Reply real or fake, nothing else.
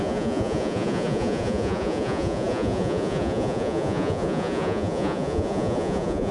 fake